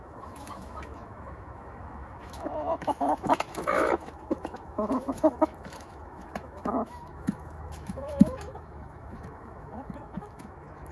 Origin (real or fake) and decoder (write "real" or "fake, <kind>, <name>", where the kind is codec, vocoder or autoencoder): fake, autoencoder, DAC-VAE